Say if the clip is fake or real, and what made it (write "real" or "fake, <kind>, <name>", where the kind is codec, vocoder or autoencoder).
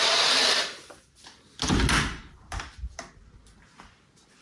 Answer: real